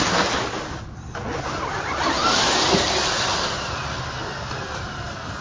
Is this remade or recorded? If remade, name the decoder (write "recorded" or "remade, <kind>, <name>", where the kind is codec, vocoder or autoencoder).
recorded